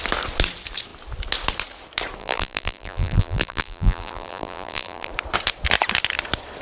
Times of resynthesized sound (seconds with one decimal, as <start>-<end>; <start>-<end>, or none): 2.2-5.1